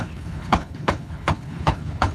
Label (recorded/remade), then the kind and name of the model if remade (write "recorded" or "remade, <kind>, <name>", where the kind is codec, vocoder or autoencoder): remade, codec, HILCodec